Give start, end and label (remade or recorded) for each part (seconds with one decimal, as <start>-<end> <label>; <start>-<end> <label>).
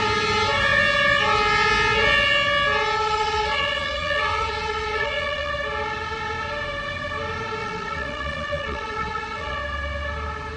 0.0-3.0 recorded; 3.0-5.5 remade; 5.5-7.6 recorded; 7.6-9.6 remade; 9.6-10.6 recorded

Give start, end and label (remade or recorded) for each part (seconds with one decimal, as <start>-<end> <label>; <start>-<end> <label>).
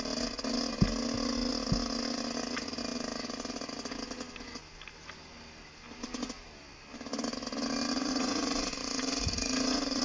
0.0-8.0 recorded; 8.0-10.0 remade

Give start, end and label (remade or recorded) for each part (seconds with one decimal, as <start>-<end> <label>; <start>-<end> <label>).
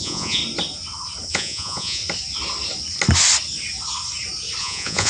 0.0-0.4 remade; 0.4-1.3 recorded; 1.3-2.0 remade; 2.0-4.6 recorded; 4.6-5.1 remade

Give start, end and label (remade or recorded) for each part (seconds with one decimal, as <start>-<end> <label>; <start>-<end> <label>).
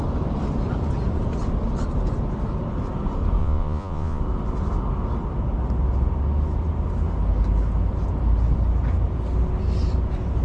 0.0-3.4 recorded; 3.4-4.2 remade; 4.2-10.4 recorded